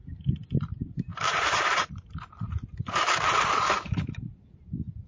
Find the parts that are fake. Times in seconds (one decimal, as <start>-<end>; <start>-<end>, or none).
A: 1.1-4.2